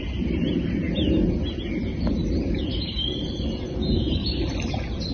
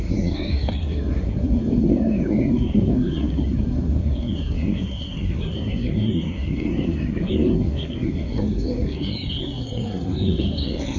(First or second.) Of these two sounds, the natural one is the first